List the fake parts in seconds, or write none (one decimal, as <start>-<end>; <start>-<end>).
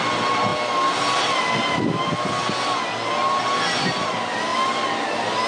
none